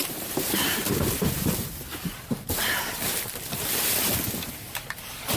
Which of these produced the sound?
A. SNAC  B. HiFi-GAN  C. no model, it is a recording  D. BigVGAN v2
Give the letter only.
D